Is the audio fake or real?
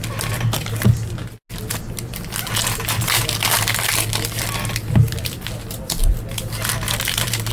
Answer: real